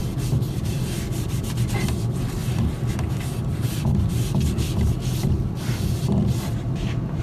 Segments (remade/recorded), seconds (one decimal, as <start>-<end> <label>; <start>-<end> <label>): 0.0-7.2 remade